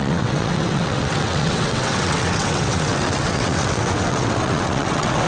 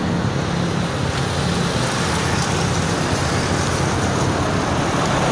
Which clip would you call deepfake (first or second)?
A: first